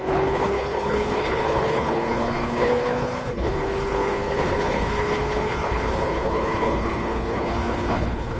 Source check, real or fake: fake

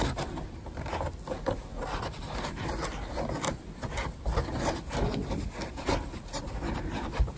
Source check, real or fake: real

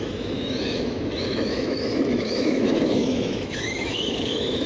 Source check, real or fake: fake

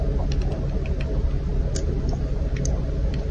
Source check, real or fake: real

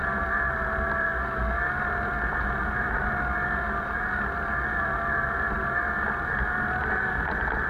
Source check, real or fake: real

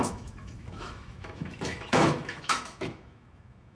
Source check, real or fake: fake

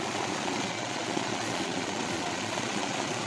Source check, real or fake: fake